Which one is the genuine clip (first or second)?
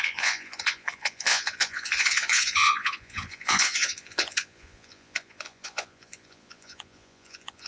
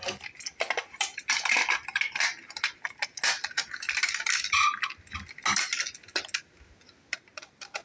second